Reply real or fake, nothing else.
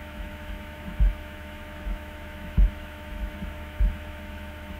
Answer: fake